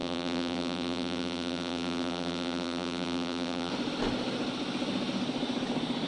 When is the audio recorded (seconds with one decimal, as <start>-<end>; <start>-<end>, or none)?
3.7-6.1